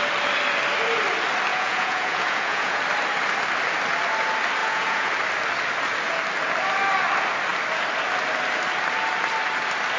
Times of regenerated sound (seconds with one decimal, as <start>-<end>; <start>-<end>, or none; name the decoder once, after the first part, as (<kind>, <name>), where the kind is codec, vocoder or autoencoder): 1.5-2.8 (vocoder, Vocos); 4.6-5.1